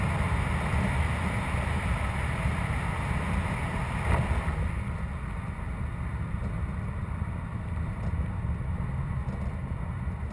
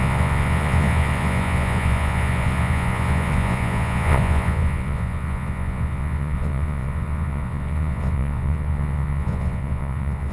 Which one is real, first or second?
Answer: first